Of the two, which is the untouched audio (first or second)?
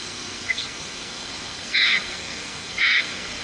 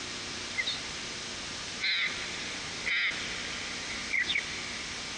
second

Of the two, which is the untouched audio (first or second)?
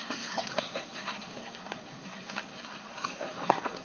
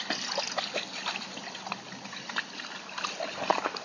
second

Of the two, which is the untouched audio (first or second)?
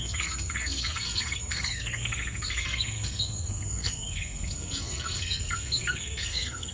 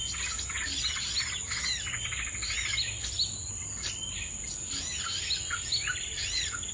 second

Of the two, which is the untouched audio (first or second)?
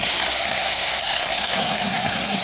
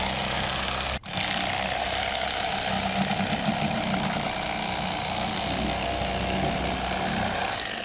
second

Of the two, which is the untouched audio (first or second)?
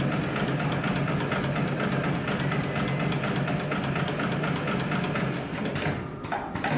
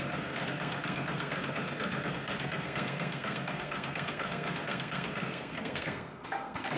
first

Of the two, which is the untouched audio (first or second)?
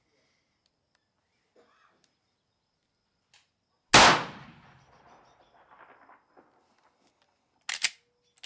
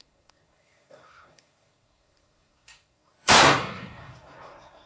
first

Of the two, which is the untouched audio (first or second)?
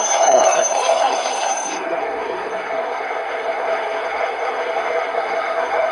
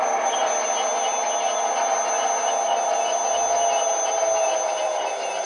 second